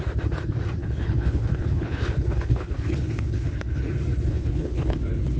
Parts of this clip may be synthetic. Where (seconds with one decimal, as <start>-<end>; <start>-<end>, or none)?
0.8-3.9; 4.3-5.0